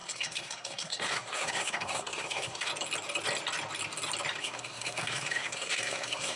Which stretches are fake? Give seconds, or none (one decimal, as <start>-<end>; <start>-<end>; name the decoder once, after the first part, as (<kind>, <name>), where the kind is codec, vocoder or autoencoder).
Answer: 0.0-2.7 (codec, SNAC); 4.4-6.4